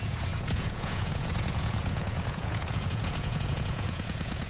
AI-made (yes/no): yes